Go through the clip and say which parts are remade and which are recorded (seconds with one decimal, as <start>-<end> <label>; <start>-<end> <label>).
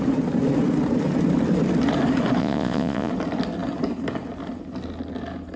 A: 0.0-2.4 recorded; 2.4-3.1 remade; 3.1-5.6 recorded